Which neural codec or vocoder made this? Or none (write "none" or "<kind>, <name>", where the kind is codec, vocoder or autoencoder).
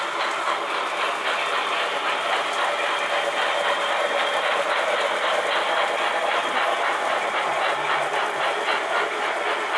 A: none